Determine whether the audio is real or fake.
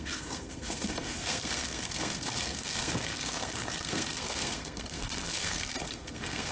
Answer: fake